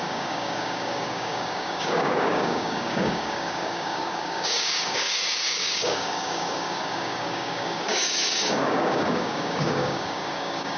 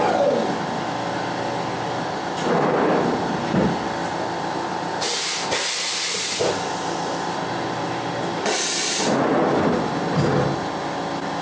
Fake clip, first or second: first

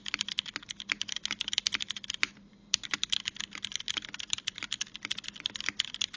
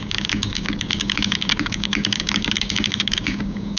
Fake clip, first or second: second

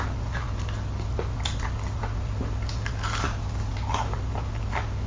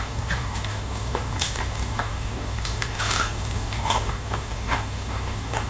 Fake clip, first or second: second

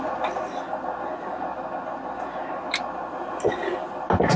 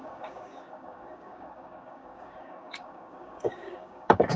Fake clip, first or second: second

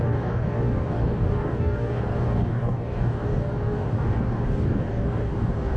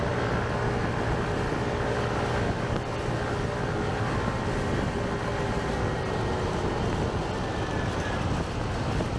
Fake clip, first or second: first